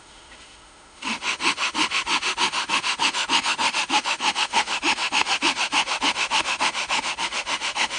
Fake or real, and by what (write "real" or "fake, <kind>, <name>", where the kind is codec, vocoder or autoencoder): fake, autoencoder, DAC-VAE